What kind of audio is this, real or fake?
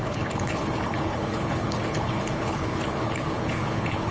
fake